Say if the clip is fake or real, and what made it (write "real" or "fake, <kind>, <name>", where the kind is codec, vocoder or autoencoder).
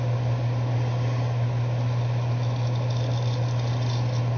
real